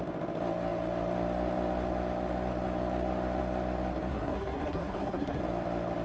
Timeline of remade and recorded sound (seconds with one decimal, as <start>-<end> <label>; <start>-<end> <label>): 0.0-4.1 recorded; 4.1-5.4 remade; 5.4-6.0 recorded